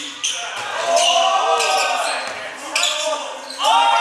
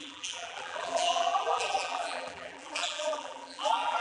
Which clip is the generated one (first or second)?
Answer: second